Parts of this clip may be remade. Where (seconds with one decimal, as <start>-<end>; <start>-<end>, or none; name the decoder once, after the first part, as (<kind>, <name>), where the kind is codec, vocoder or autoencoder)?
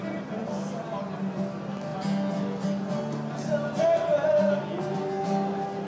4.1-4.6 (vocoder, BigVGAN v2)